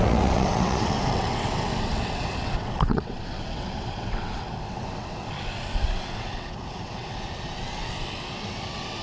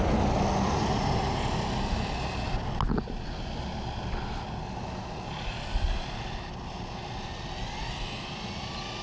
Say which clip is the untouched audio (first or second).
second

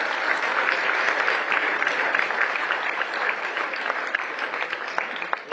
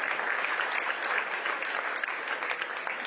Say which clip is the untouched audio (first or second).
second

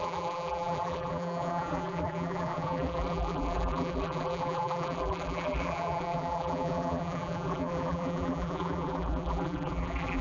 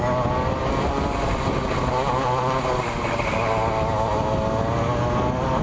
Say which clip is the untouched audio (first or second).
second